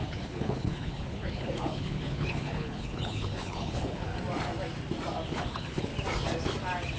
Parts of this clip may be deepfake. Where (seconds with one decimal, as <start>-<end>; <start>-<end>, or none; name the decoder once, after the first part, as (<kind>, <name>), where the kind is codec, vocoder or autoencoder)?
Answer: 0.0-4.1 (codec, HILCodec); 5.3-5.9